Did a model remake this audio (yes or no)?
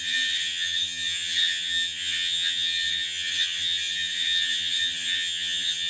yes